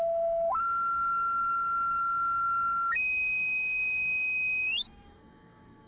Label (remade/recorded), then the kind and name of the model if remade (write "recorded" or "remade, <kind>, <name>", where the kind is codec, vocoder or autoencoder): remade, codec, DAC